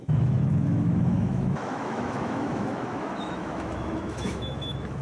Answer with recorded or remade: remade